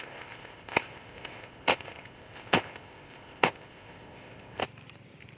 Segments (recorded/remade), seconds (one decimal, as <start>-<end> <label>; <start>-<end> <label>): 0.0-4.6 remade; 4.6-5.4 recorded